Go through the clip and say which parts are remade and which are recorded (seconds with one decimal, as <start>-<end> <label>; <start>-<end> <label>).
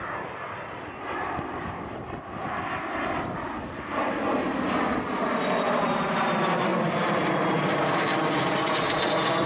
0.0-9.5 recorded